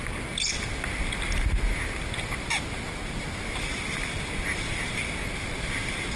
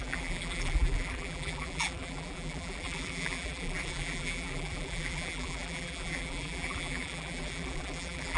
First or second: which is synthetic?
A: second